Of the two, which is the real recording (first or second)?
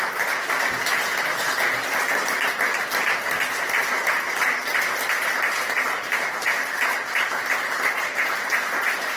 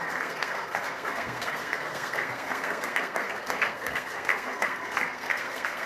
first